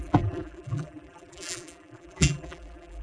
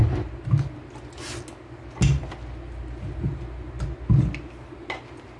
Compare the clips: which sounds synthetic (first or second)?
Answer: first